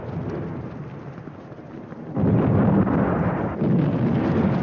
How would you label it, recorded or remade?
recorded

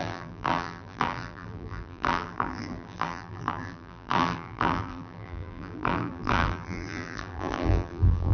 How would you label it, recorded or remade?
remade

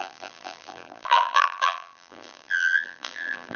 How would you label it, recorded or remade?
remade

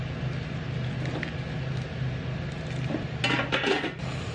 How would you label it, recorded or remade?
recorded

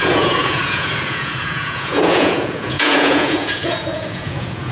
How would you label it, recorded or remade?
remade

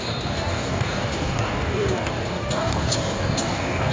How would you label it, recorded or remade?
remade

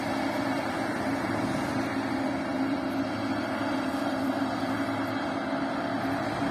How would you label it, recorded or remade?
recorded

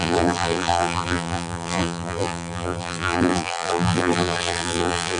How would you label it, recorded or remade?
remade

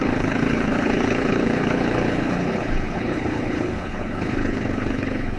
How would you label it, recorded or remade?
remade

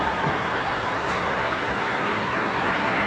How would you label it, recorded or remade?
remade